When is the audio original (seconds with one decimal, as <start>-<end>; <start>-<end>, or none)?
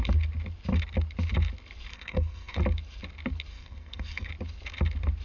0.0-1.9; 2.6-3.5; 4.3-5.2